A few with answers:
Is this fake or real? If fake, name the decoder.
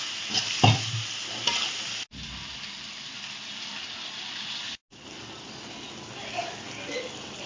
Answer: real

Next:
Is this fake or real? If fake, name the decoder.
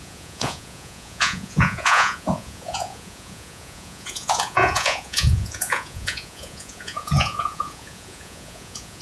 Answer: fake, vocoder, Vocos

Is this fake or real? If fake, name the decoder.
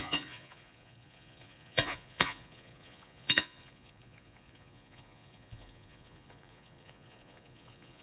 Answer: fake, vocoder, Vocos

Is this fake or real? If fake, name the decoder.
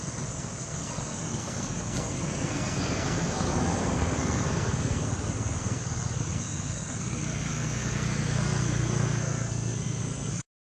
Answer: fake, codec, SNAC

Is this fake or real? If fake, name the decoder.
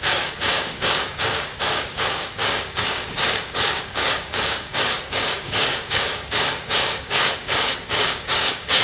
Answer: fake, codec, DAC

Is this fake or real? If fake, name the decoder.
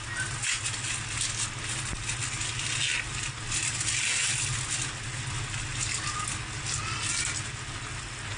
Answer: real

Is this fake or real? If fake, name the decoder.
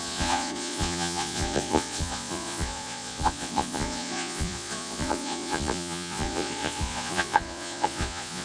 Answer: fake, vocoder, Vocos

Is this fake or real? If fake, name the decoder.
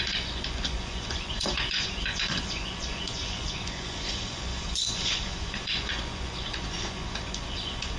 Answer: fake, vocoder, Vocos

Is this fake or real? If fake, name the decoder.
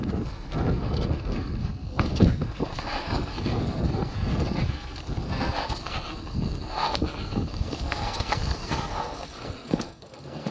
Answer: fake, codec, SNAC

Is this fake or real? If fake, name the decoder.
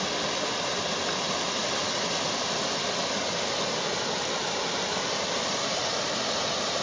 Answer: real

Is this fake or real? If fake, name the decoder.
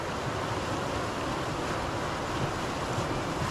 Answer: real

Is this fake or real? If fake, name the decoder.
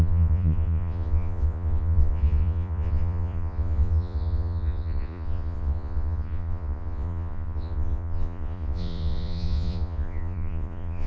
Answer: fake, vocoder, Vocos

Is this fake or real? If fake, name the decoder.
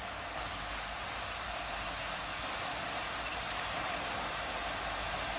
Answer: real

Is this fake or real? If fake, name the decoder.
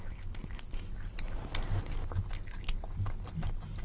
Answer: real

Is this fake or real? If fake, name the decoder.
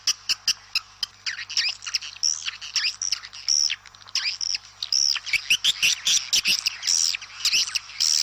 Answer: real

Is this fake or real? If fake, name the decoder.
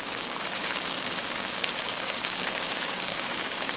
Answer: fake, codec, DAC